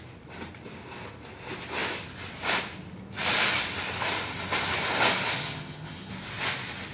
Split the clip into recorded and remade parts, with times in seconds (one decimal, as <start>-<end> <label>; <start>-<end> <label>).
0.0-5.4 recorded; 5.4-6.1 remade; 6.1-6.9 recorded